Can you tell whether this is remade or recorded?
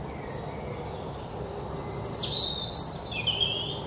recorded